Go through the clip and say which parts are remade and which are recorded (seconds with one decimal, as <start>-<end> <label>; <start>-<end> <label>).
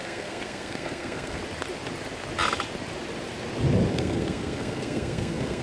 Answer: 0.0-1.4 remade; 1.4-3.9 recorded; 3.9-5.6 remade